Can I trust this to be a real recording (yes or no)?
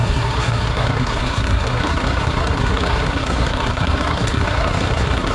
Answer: no